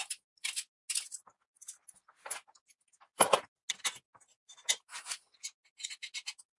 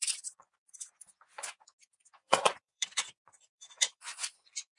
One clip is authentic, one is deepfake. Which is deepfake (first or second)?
second